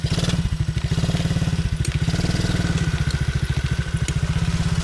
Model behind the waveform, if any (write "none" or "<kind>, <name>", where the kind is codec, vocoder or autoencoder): none